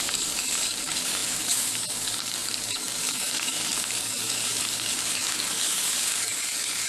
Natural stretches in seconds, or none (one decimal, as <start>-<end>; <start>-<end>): none